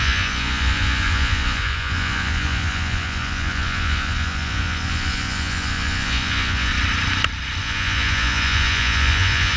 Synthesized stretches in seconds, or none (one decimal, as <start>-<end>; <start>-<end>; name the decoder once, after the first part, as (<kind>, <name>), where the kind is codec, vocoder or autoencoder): 0.0-6.7 (vocoder, Vocos); 7.6-9.6